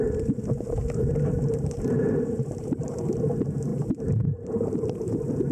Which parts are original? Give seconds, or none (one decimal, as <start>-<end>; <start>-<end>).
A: 0.0-1.0; 3.1-3.7; 4.5-5.5

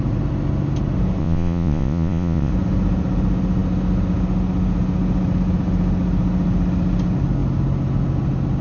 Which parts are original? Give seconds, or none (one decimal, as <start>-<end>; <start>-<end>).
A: 0.0-1.2; 2.5-8.6

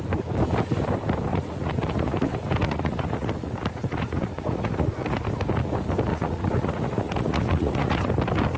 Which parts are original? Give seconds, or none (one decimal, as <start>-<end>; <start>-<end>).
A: 0.0-1.3; 5.2-6.1; 8.1-8.6

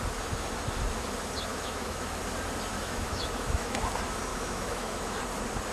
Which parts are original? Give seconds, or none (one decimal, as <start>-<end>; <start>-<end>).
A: 0.0-1.5; 2.2-2.7; 3.8-4.3; 5.2-5.7

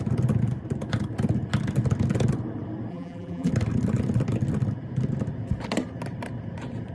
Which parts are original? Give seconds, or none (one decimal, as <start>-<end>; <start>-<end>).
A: 0.0-2.9; 3.5-6.9

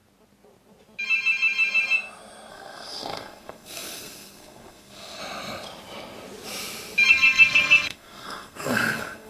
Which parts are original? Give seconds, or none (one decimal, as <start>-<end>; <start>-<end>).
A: 0.0-2.5; 5.2-7.1